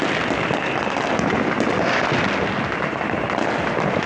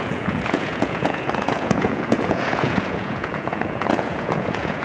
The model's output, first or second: second